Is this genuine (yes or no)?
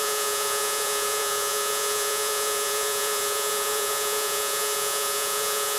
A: no